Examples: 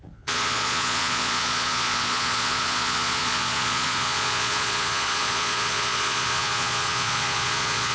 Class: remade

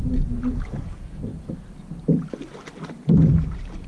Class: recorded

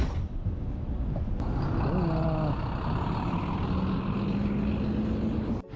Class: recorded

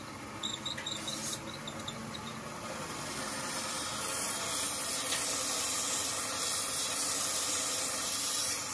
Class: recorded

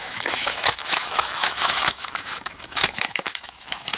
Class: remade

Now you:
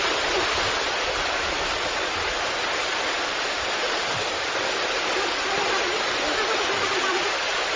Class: recorded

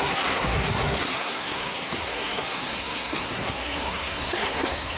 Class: remade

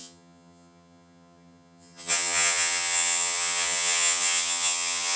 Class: remade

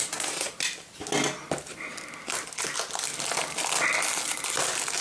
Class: recorded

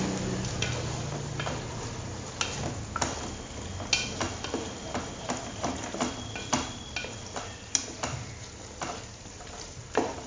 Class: recorded